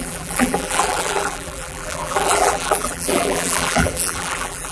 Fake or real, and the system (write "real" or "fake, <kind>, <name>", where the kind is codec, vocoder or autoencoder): fake, vocoder, BigVGAN v2